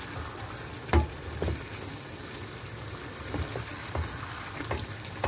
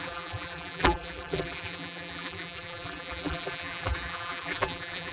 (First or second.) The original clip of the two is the first